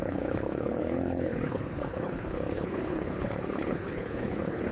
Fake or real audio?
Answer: fake